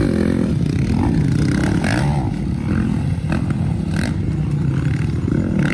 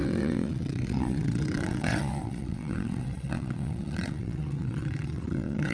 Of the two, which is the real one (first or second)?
first